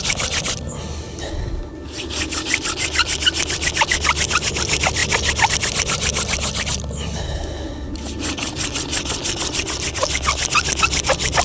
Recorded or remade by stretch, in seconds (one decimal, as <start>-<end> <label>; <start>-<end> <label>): 0.0-11.4 recorded